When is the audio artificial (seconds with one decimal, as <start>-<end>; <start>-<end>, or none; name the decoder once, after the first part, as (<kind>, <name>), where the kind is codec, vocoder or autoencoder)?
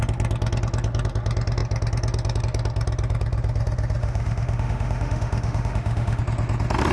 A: 4.0-6.2 (autoencoder, DAC-VAE)